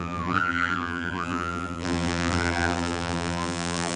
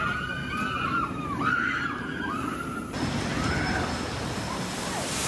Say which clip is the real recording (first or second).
second